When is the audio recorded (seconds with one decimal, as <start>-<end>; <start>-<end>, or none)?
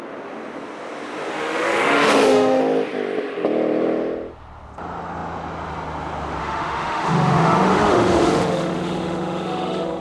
0.0-1.3; 2.6-6.4